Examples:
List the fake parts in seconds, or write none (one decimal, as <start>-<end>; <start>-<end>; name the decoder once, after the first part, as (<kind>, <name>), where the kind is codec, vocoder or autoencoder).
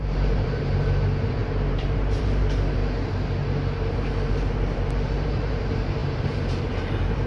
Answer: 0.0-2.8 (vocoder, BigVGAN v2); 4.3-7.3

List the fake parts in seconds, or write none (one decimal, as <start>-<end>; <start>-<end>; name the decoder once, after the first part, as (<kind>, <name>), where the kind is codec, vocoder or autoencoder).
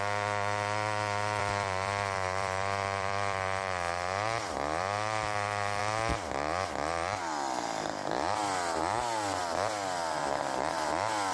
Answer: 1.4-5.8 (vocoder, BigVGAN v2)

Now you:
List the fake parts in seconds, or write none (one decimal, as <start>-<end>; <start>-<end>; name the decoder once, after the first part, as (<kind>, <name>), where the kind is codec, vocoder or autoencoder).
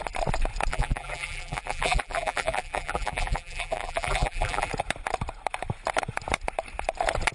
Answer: 0.7-4.7 (vocoder, BigVGAN v2)